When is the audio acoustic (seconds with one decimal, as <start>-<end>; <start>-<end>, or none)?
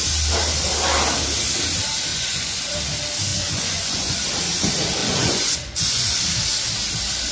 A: 0.0-2.1; 2.7-3.3; 4.2-5.0; 6.2-7.3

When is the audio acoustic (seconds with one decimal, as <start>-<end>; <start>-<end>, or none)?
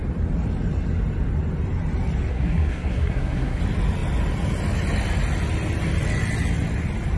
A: 0.0-2.3; 3.6-7.2